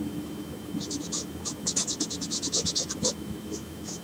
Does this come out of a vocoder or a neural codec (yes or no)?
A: yes